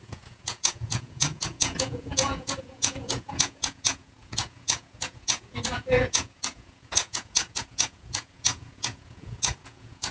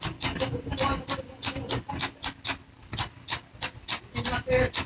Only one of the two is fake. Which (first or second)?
first